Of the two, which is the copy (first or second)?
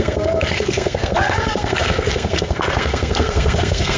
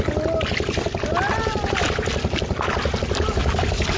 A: first